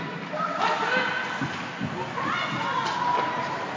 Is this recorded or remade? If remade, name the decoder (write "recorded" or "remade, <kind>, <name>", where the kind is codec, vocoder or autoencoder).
recorded